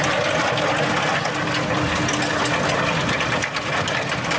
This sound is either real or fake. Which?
real